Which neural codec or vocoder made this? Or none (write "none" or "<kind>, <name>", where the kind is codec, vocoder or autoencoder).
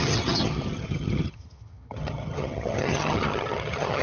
vocoder, HiFi-GAN